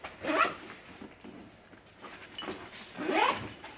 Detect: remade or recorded recorded